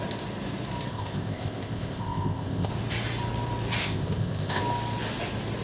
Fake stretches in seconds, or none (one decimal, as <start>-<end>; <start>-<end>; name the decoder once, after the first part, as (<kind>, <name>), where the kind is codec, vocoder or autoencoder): 0.9-2.7 (codec, ZipCodec); 3.8-4.6